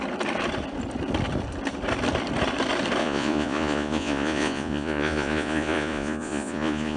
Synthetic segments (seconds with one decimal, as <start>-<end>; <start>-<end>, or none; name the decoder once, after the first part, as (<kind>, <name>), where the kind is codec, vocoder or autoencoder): 3.0-7.0 (vocoder, Vocos)